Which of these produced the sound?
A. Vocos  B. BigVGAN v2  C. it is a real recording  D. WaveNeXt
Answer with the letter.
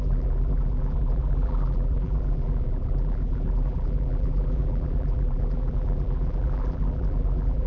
B